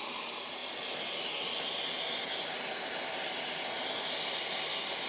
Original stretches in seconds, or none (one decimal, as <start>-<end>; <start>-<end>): 0.0-5.1